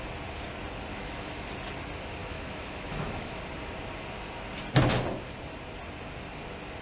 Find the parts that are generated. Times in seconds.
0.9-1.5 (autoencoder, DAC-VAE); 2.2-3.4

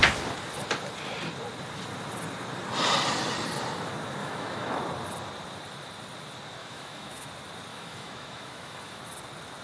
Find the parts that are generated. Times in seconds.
4.2-4.8 (autoencoder, DAC-VAE); 6.6-7.3; 7.7-9.0

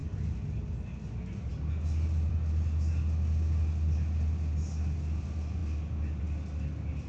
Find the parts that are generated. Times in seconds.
none

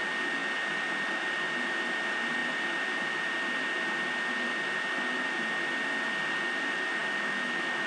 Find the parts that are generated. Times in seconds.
7.0-7.9 (autoencoder, DAC-VAE)

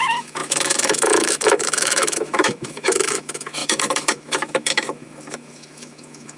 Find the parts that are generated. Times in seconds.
0.0-6.4 (autoencoder, DAC-VAE)

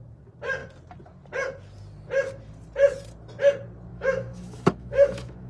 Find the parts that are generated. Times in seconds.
3.9-5.5 (autoencoder, DAC-VAE)

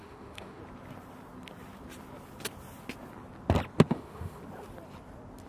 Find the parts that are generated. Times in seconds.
0.0-0.6 (autoencoder, DAC-VAE); 3.9-4.4